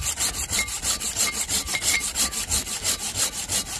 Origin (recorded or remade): recorded